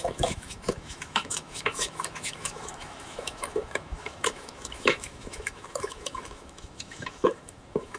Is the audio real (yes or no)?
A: no